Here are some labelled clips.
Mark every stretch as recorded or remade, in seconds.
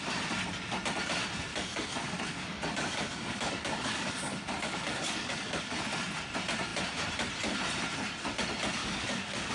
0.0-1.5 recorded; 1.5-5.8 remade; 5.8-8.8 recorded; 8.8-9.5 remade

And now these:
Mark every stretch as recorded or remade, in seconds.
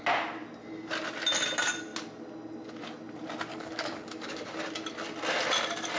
0.0-3.5 recorded; 3.5-4.6 remade; 4.6-6.0 recorded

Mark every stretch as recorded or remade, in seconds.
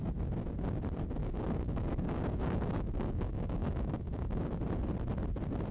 0.0-1.2 recorded; 1.2-4.6 remade; 4.6-5.7 recorded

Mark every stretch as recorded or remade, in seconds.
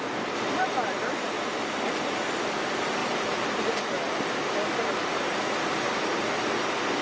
0.0-7.0 recorded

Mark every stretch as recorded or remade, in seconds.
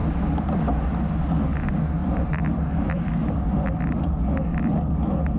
0.0-2.0 recorded; 2.0-4.1 remade; 4.1-5.4 recorded